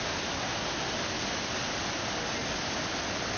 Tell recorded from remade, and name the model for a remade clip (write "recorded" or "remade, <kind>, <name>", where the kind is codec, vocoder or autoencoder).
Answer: recorded